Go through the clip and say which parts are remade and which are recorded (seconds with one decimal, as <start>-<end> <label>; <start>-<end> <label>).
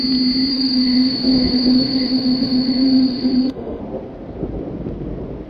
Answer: 0.0-0.5 recorded; 0.5-3.8 remade; 3.8-5.5 recorded